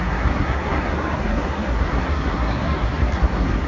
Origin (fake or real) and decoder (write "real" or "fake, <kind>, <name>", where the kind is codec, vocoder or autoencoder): fake, codec, SNAC